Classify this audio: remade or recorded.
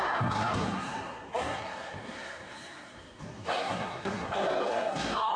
remade